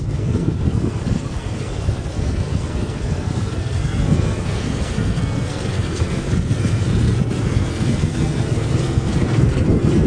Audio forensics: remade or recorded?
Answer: remade